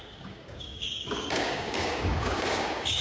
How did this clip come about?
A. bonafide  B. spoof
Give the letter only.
B